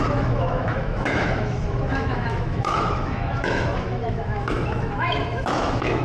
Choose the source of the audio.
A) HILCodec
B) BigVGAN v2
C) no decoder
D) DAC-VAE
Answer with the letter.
D